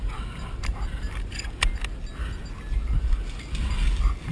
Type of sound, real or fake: real